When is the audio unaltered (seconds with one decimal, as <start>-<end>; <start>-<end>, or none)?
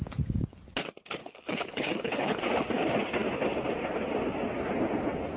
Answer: 0.0-1.2; 2.4-5.4